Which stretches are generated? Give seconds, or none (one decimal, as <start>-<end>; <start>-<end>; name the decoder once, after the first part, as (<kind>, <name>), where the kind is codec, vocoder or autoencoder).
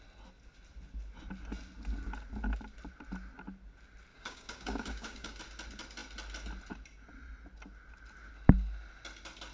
4.1-5.4 (codec, DAC)